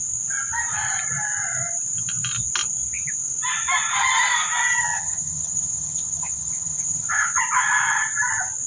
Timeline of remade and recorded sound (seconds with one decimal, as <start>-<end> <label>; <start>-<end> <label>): 0.0-4.8 recorded; 4.8-7.4 remade; 7.4-8.7 recorded